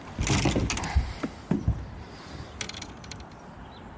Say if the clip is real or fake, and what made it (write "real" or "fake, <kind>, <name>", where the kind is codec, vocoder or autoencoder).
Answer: real